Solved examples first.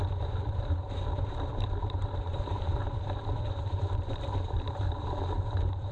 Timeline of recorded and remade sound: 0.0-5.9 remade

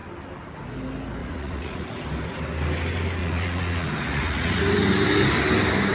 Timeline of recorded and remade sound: 0.0-1.2 recorded; 1.2-2.0 remade; 2.0-3.2 recorded; 3.2-4.6 remade; 4.6-5.9 recorded

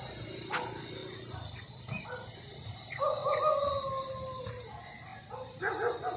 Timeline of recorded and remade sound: 0.0-6.2 recorded